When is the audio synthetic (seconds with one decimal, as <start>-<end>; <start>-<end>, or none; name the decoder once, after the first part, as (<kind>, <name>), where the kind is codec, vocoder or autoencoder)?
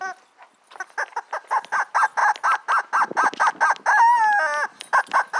none